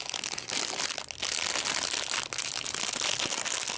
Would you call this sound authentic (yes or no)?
yes